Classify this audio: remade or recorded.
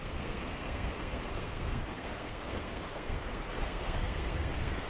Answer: remade